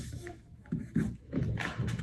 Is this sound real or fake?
fake